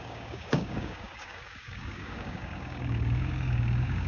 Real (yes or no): no